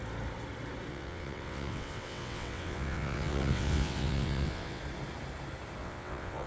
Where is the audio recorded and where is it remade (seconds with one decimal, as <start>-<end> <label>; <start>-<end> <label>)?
0.0-0.9 recorded; 0.9-4.8 remade; 4.8-5.8 recorded; 5.8-6.5 remade